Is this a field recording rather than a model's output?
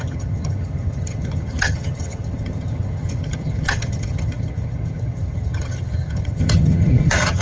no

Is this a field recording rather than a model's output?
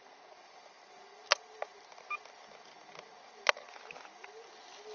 yes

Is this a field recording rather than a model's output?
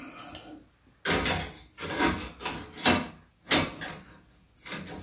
yes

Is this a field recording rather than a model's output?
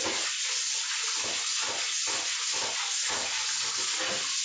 yes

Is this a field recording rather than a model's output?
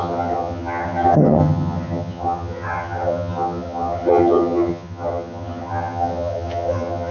no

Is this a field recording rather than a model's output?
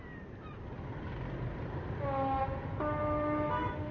yes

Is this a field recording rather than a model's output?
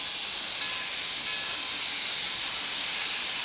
yes